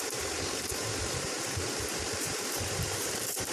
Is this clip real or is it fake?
fake